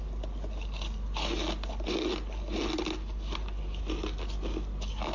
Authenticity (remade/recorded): recorded